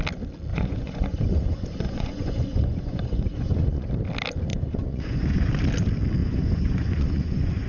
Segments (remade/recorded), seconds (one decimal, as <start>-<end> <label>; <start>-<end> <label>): 0.0-0.5 recorded; 0.5-3.9 remade; 3.9-4.5 recorded; 4.5-5.5 remade; 5.5-6.2 recorded; 6.2-7.7 remade